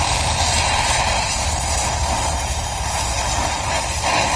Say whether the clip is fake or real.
real